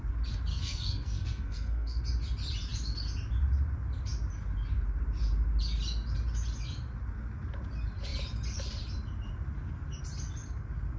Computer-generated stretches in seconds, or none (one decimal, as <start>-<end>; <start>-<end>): 0.5-2.0